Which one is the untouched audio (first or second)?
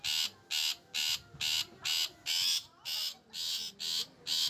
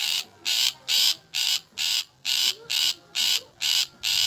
first